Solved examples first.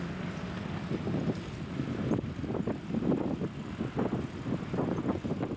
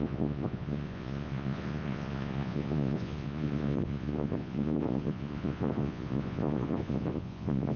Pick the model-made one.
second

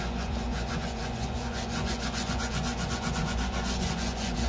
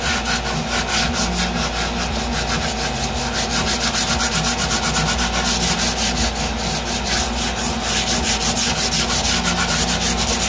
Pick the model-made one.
first